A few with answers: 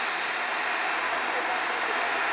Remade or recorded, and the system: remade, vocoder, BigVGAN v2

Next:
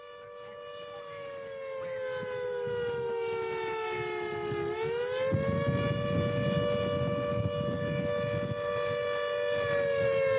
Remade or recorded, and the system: recorded